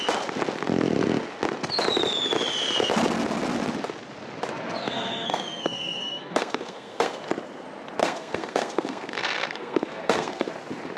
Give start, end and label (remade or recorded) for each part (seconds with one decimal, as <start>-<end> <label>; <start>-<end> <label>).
0.0-4.8 recorded; 4.8-7.2 remade; 7.2-8.0 recorded; 8.0-10.5 remade; 10.5-11.0 recorded